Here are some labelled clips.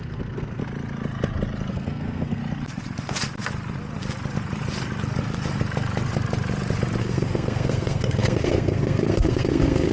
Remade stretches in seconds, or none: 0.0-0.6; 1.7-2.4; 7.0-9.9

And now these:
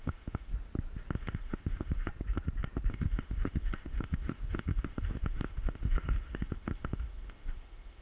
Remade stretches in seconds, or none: 0.0-0.5; 1.1-2.1; 2.9-8.0

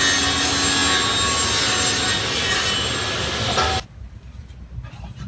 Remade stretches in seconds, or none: none